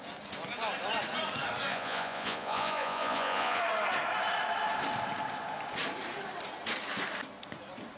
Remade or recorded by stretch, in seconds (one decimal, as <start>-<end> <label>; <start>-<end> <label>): 0.0-1.7 recorded; 1.7-3.6 remade; 3.6-8.0 recorded